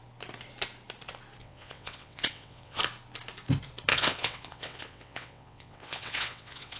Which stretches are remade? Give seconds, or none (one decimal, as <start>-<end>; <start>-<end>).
1.4-2.8; 3.9-6.8